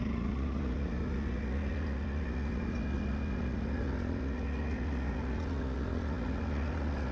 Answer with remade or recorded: remade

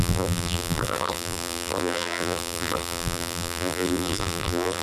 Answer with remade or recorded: remade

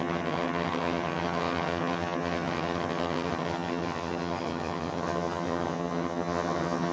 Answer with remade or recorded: remade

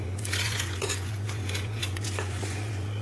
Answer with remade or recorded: remade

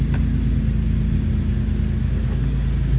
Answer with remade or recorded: recorded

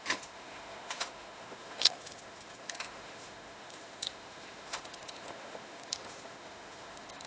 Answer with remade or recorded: remade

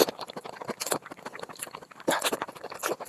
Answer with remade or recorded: recorded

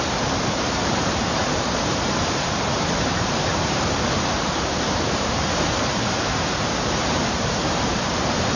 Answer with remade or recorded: remade